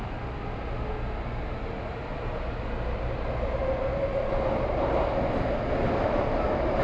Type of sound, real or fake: real